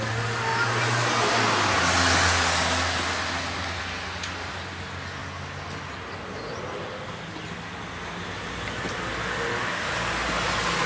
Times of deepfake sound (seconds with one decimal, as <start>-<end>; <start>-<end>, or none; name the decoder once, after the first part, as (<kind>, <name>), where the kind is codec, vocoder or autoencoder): none